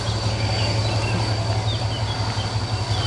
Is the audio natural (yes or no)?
yes